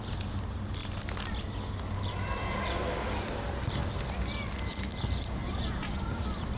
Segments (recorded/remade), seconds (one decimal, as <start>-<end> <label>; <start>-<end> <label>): 0.0-6.6 recorded